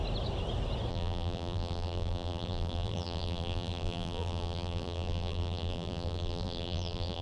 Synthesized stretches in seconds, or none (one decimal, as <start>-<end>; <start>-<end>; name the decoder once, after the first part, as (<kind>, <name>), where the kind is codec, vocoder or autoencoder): 0.9-7.2 (vocoder, BigVGAN v2)